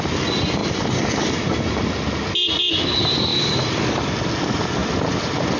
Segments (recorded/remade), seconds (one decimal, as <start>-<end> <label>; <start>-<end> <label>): 0.0-0.6 recorded; 0.6-1.8 remade; 1.8-3.3 recorded; 3.3-3.8 remade; 3.8-4.8 recorded; 4.8-5.6 remade